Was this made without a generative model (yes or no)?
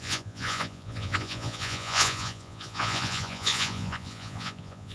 no